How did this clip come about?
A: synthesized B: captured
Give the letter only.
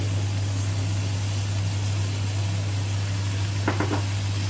B